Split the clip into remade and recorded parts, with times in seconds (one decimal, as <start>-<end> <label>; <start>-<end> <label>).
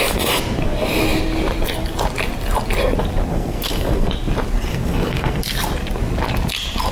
0.0-3.3 recorded; 3.3-4.1 remade; 4.1-4.7 recorded; 4.7-5.4 remade; 5.4-6.9 recorded